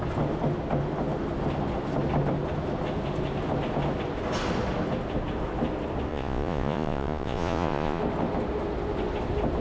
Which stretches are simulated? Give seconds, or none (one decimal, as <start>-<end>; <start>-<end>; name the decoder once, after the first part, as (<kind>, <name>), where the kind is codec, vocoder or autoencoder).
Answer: 6.1-8.0 (vocoder, Vocos)